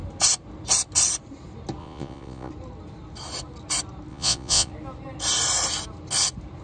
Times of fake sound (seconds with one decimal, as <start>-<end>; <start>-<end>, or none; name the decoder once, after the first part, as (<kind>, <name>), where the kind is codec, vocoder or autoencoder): 1.8-2.5 (vocoder, Vocos); 4.1-4.7